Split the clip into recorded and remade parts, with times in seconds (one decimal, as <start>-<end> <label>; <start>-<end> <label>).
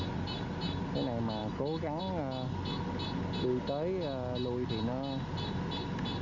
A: 0.0-1.4 recorded; 1.4-2.0 remade; 2.0-6.2 recorded